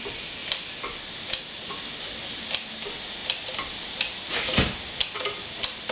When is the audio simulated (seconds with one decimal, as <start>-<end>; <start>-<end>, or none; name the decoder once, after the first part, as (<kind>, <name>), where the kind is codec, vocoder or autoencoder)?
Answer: 3.2-4.3 (vocoder, BigVGAN v2)